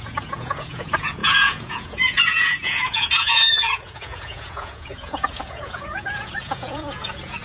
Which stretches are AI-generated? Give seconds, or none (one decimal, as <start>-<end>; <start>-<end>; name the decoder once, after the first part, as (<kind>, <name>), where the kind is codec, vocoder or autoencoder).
0.0-7.4 (vocoder, Vocos)